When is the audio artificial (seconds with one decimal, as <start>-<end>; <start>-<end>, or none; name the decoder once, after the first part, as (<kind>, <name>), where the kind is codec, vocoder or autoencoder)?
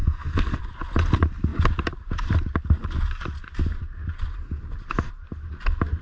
0.0-0.6 (codec, SNAC)